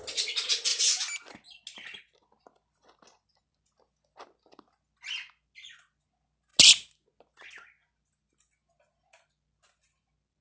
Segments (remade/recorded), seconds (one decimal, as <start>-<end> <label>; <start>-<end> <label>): 0.0-10.4 recorded